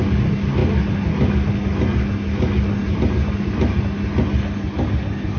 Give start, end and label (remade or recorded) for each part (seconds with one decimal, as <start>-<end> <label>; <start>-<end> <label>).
0.0-5.4 recorded